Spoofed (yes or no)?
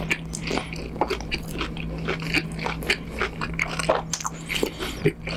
no